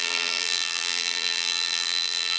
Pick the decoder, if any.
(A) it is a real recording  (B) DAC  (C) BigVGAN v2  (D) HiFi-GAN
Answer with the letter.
C